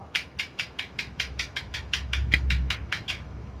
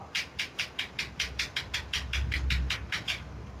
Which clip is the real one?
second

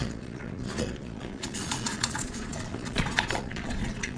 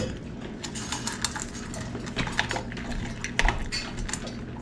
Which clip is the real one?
second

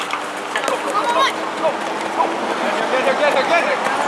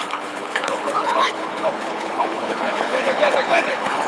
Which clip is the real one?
first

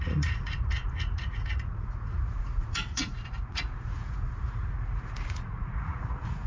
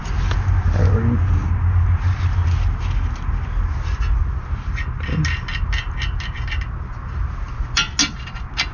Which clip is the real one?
second